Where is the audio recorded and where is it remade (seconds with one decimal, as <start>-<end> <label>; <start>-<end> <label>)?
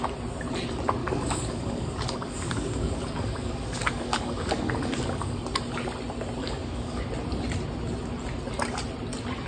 0.0-1.0 recorded; 1.0-5.4 remade; 5.4-6.4 recorded; 6.4-7.0 remade; 7.0-9.5 recorded